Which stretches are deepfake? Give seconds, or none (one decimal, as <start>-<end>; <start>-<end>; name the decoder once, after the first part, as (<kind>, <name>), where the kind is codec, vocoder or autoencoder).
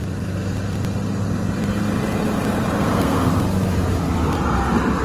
2.8-3.3 (codec, SNAC)